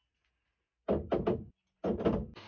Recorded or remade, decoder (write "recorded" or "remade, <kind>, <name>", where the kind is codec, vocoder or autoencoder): recorded